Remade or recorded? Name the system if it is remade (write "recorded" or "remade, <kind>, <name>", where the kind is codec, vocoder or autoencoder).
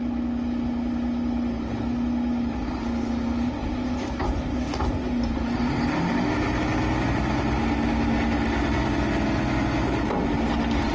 recorded